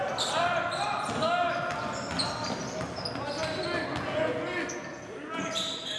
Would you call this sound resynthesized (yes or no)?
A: no